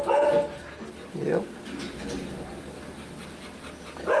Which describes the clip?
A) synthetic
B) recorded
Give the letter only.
B